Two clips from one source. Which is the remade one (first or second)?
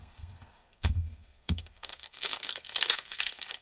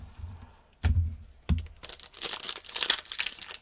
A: first